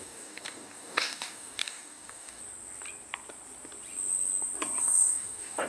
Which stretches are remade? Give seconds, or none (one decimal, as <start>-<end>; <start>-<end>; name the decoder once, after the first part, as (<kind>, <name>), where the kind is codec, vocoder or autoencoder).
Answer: 0.0-2.4 (codec, DAC); 4.8-5.7